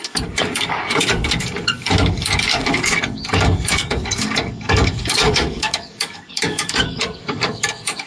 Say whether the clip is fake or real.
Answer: fake